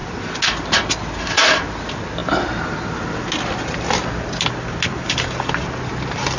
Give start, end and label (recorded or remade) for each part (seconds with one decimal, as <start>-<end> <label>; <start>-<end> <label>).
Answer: 0.0-6.4 recorded